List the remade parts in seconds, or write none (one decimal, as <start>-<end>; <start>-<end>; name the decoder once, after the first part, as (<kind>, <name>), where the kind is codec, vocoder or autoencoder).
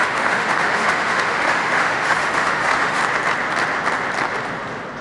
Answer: 0.0-3.0 (autoencoder, DAC-VAE)